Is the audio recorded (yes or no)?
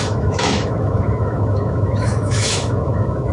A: no